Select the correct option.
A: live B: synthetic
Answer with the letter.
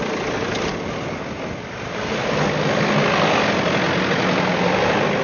A